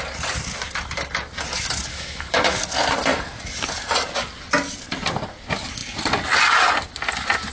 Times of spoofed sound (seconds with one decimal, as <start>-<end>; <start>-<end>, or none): 1.9-2.6